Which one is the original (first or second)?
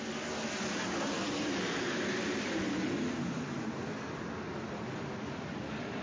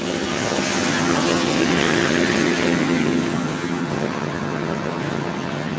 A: first